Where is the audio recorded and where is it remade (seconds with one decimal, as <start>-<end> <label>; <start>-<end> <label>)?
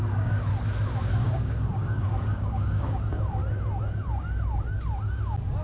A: 0.0-0.5 remade; 0.5-1.1 recorded; 1.1-3.4 remade; 3.4-5.6 recorded